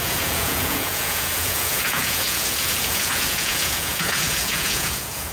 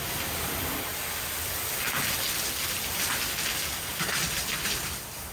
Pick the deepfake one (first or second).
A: first